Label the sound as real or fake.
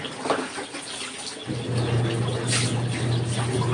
real